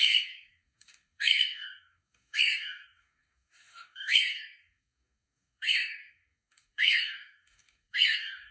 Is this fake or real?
fake